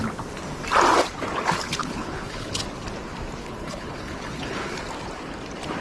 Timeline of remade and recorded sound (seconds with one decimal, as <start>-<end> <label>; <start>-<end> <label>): 0.0-1.8 recorded; 1.8-2.6 remade; 2.6-3.4 recorded; 3.4-4.8 remade; 4.8-5.8 recorded